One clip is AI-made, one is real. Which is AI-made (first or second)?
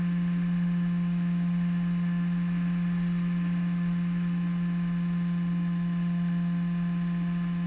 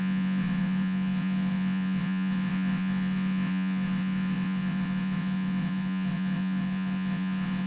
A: second